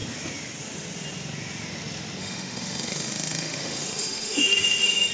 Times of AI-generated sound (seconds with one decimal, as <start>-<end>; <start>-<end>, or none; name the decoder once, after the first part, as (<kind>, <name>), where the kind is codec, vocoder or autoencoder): 2.2-5.1 (autoencoder, DAC-VAE)